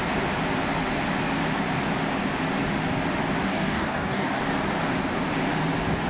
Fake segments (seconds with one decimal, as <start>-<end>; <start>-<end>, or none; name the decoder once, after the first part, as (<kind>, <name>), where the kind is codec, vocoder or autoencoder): 3.5-4.4 (codec, DAC)